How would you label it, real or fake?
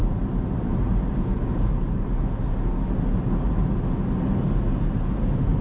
real